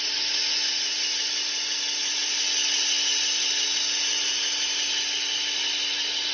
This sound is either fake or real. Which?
real